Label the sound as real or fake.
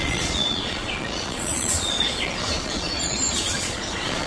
fake